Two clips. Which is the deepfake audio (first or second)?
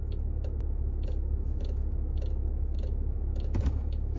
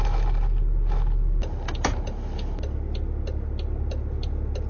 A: first